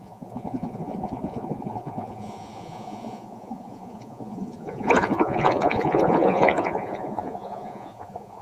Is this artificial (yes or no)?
yes